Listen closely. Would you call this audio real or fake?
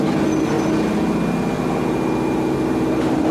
real